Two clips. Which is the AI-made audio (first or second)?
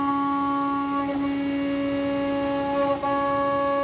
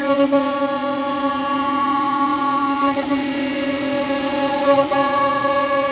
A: second